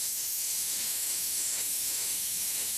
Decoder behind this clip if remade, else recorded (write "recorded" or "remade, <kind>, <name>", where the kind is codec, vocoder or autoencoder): remade, autoencoder, DAC-VAE